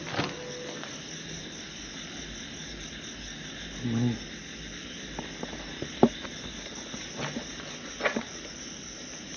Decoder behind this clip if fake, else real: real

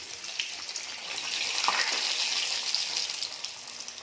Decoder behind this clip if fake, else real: real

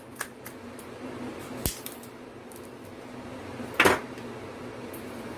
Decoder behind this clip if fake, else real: real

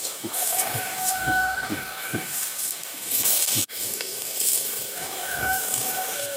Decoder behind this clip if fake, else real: fake, codec, DAC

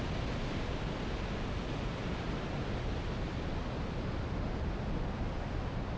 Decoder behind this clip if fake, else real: real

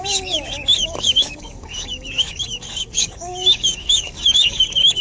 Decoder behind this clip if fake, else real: fake, codec, DAC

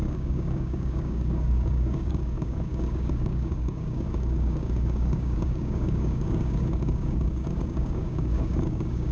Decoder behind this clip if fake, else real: fake, codec, DAC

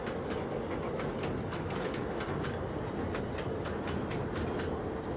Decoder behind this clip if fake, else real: real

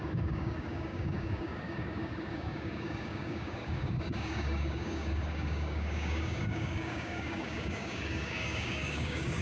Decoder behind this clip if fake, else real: fake, codec, DAC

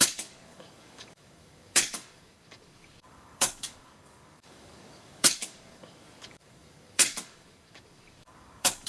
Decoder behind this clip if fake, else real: fake, codec, DAC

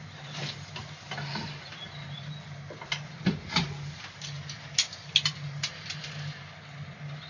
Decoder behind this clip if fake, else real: real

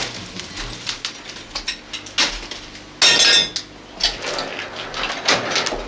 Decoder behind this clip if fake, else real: real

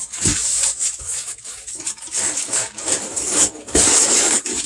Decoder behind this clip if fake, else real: fake, codec, DAC